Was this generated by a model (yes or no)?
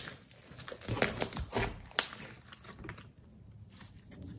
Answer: no